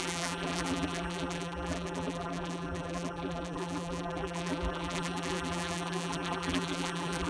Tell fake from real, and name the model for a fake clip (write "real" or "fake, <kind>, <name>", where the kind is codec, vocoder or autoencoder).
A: fake, vocoder, BigVGAN v2